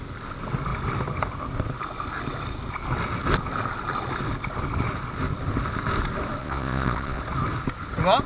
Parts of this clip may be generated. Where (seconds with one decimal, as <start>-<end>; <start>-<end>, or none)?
6.4-7.2